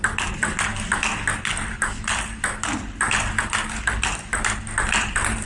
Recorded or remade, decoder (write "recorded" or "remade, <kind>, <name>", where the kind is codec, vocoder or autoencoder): recorded